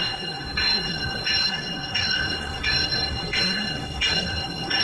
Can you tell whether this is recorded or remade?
remade